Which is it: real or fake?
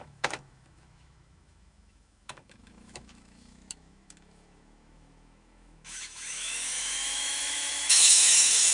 fake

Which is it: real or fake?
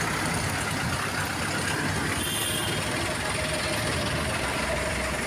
real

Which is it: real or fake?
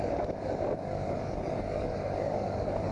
fake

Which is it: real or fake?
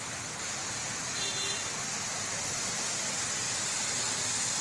real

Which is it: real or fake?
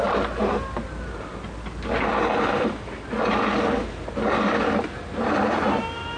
real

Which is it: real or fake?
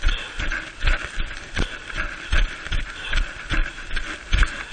real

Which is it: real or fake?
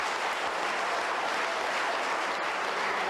real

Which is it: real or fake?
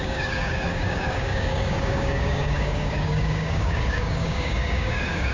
fake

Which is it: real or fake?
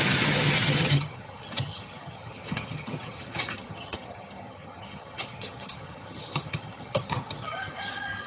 fake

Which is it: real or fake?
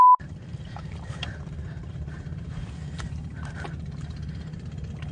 fake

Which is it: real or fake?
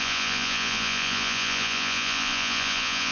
fake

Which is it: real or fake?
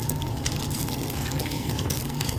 fake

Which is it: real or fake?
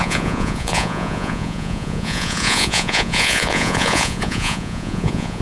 fake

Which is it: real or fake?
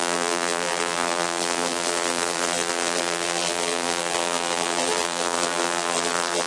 fake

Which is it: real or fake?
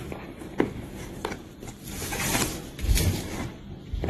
fake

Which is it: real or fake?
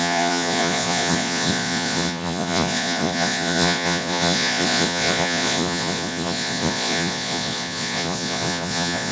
fake